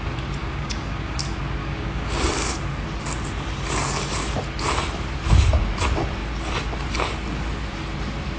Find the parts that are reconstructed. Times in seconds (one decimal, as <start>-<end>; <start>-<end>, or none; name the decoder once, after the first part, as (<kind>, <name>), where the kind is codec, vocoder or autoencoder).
0.4-1.2 (codec, DAC); 1.6-2.3